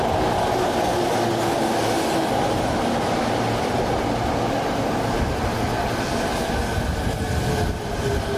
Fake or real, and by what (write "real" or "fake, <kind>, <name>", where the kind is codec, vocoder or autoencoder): real